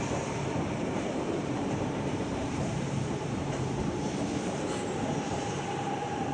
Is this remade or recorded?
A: remade